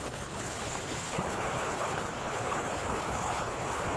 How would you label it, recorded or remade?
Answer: remade